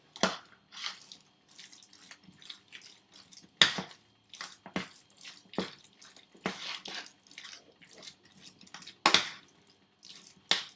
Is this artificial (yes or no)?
no